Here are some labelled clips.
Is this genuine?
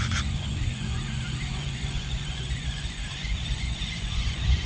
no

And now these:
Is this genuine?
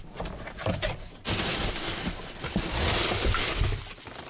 yes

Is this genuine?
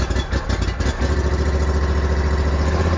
yes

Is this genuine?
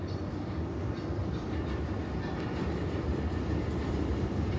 no